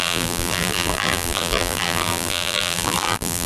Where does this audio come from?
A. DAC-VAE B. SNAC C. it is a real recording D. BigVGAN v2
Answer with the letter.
D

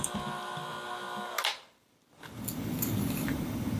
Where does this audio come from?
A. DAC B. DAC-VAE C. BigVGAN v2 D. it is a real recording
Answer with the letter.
D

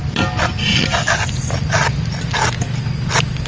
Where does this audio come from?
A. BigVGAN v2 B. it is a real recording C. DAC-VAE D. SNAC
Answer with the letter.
B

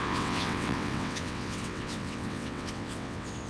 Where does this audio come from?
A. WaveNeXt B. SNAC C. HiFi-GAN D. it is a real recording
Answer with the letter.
A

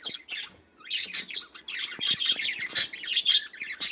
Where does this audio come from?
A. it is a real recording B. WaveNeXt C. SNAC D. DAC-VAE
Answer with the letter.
A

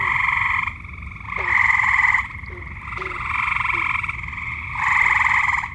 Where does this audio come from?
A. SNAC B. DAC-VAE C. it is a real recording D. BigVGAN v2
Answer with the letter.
C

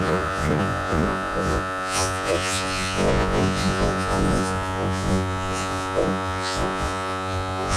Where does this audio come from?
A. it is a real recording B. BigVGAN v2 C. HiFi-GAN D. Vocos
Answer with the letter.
D